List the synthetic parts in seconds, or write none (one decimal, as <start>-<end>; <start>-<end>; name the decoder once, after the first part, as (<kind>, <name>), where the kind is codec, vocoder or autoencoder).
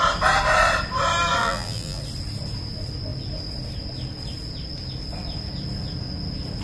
1.4-2.0 (vocoder, BigVGAN v2)